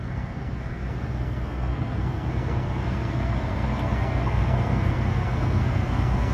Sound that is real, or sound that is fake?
fake